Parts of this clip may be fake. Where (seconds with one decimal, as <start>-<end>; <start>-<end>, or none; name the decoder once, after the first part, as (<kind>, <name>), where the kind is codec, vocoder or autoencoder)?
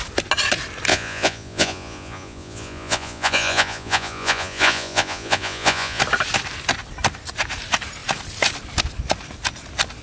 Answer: 0.9-6.0 (vocoder, Vocos)